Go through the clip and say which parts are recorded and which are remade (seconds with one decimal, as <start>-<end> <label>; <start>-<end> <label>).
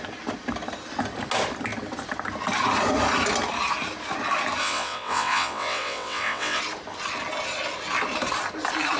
0.0-4.6 recorded; 4.6-6.6 remade; 6.6-9.0 recorded